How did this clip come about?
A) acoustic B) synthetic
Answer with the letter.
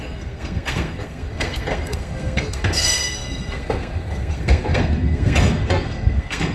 B